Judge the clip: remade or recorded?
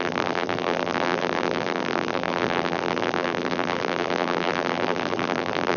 remade